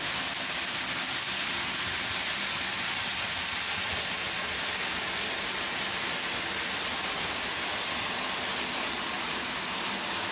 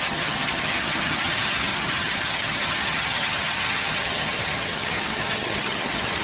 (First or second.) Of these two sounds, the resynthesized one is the second